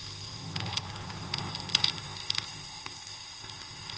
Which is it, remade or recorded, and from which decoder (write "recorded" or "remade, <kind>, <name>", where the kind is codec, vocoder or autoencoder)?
remade, codec, ZipCodec